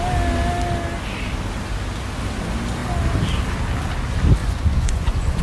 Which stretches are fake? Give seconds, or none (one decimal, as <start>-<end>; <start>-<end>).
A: 4.4-5.4